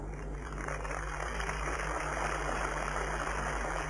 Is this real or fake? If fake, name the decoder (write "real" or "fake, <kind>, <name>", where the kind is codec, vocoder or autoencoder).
fake, vocoder, BigVGAN v2